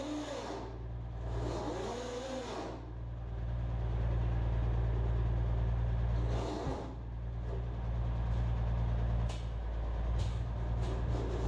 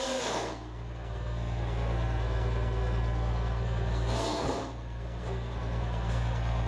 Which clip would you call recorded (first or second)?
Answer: first